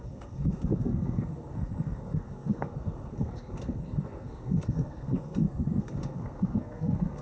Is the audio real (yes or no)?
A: no